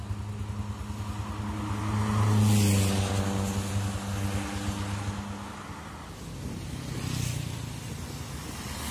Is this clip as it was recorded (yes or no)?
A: yes